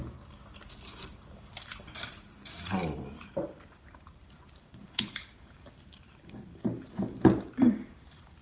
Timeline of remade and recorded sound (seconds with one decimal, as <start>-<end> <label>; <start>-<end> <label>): 0.0-8.4 remade